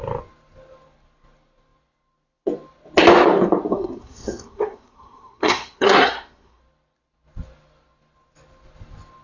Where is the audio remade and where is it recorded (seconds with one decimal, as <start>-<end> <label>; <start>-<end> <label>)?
0.0-3.7 recorded; 3.7-6.6 remade; 6.6-9.2 recorded